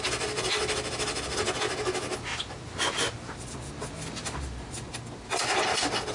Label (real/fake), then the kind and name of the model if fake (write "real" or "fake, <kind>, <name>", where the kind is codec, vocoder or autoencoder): real